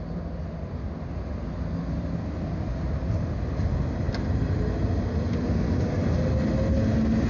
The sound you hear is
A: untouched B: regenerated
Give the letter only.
A